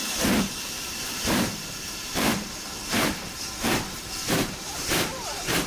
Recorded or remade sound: remade